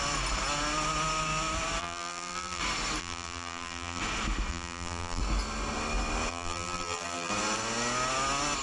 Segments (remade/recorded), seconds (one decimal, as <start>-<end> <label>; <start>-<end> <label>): 0.0-1.8 recorded; 1.8-2.6 remade; 2.6-3.0 recorded; 3.0-4.0 remade; 4.0-4.5 recorded; 4.5-5.2 remade; 5.2-6.3 recorded; 6.3-7.3 remade; 7.3-8.6 recorded